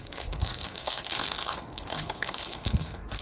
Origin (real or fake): fake